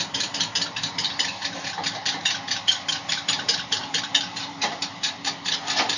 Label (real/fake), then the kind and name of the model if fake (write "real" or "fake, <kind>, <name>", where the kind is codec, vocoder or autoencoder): fake, vocoder, BigVGAN v2